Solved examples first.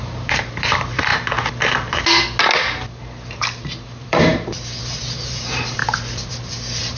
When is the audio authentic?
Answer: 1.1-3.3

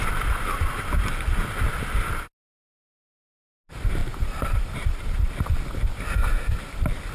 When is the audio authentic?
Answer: 0.0-4.0; 5.3-7.1

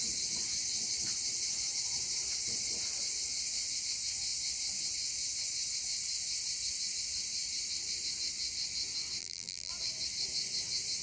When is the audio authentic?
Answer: 0.0-9.2; 9.7-11.0

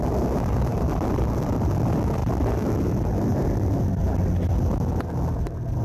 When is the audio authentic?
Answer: 0.0-0.7; 1.7-5.8

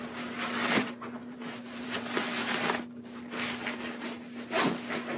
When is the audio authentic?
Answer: 0.0-1.2; 2.0-5.2

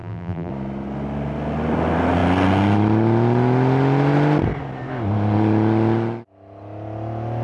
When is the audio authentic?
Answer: 0.5-7.4

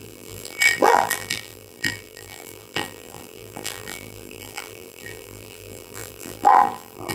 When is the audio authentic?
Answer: none